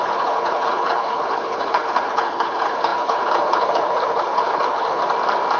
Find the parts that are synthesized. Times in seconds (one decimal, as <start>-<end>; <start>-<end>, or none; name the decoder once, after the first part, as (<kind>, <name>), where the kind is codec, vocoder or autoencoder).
0.0-5.0 (codec, HILCodec)